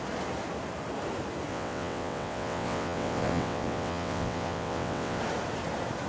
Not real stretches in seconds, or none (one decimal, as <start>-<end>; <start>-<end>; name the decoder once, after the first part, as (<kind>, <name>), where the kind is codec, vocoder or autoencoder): 1.5-5.2 (vocoder, WaveNeXt)